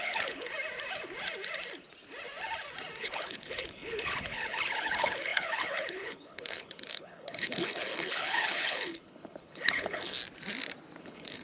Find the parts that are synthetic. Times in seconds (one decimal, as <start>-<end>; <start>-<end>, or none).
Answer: 0.0-0.5; 3.0-10.2; 11.0-11.4